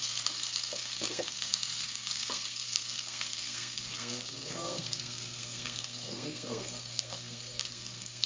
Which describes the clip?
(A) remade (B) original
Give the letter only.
A